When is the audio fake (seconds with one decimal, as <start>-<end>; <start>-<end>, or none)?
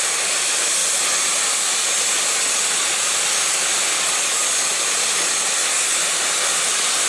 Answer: none